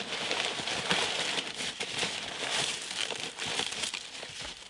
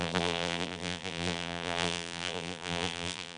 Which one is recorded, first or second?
first